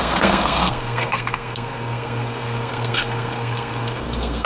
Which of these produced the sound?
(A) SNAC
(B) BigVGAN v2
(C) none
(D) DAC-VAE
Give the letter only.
A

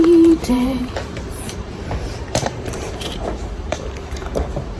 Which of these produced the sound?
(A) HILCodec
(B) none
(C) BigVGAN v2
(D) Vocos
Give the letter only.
C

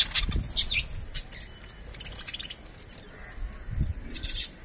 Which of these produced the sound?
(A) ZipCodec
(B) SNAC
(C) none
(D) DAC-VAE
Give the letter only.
C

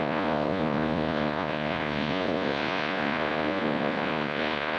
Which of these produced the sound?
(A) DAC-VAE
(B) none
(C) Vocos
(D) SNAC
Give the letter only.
C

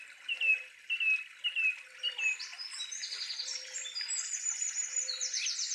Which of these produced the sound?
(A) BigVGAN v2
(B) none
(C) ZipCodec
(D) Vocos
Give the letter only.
B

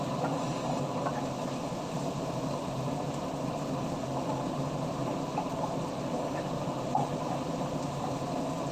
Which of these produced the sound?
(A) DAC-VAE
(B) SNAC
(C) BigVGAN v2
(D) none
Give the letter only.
D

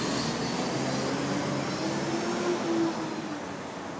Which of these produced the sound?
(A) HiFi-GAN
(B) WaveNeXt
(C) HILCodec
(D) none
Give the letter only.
D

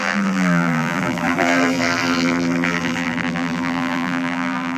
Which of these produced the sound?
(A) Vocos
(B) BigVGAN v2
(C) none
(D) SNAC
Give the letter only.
B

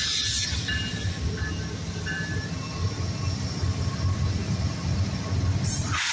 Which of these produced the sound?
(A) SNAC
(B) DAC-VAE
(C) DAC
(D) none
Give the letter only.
D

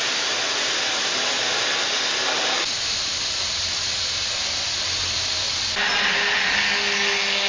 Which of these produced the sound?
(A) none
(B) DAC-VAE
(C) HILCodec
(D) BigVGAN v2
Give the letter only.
A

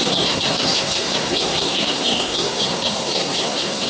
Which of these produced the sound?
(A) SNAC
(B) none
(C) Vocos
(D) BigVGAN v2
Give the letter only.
A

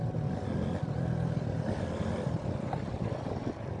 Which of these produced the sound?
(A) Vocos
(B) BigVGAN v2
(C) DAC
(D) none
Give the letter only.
D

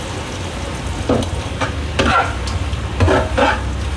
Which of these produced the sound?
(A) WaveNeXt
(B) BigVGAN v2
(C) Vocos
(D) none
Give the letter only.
D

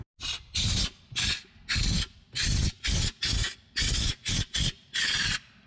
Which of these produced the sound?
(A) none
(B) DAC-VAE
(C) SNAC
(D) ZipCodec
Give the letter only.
A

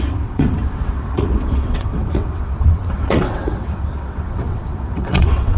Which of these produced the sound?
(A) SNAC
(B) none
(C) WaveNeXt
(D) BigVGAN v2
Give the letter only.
C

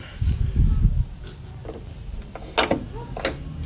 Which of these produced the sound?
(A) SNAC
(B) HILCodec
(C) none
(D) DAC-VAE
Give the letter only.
C